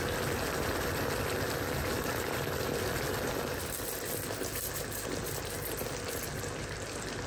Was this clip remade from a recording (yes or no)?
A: no